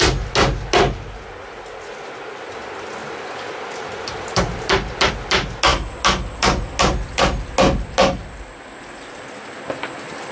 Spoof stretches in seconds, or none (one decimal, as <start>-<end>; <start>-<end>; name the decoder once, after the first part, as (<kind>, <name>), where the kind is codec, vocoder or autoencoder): 3.0-5.1 (vocoder, BigVGAN v2)